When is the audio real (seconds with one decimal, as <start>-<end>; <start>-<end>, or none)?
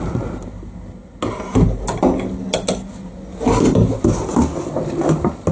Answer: 0.0-5.5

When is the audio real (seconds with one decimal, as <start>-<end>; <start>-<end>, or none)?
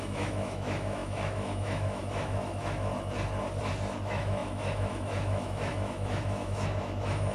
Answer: 2.9-4.0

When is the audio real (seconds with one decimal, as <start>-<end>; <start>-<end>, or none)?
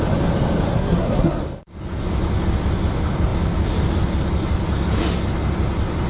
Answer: 0.0-0.7; 1.4-6.1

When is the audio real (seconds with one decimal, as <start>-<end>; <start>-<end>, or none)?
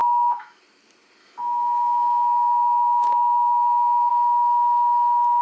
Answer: 0.6-1.2; 4.1-5.4